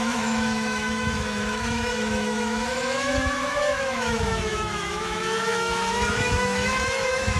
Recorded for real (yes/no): no